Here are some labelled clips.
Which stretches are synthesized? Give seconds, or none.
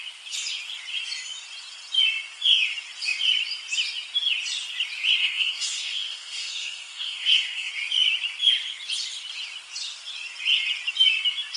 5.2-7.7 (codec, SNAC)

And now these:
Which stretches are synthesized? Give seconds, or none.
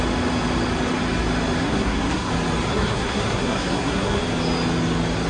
1.6-2.3 (codec, SNAC); 2.7-4.2